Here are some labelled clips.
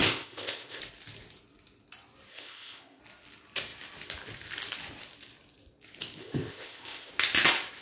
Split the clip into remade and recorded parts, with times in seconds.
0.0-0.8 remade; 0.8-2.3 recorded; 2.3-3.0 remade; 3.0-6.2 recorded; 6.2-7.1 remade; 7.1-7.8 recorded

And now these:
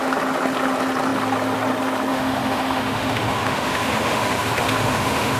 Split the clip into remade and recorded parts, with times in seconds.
0.0-2.1 recorded; 2.1-5.4 remade

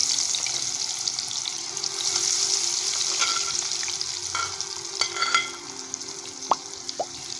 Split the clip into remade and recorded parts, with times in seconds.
0.0-1.4 recorded; 1.4-3.3 remade; 3.3-3.8 recorded; 3.8-4.2 remade; 4.2-7.0 recorded; 7.0-7.4 remade